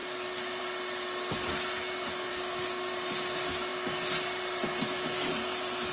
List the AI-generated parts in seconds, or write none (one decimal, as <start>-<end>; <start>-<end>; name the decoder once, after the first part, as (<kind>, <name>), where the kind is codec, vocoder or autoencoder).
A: 2.3-2.9 (codec, DAC)